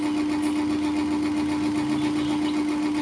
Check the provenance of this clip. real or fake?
real